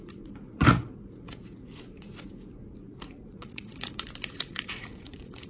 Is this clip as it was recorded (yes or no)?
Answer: no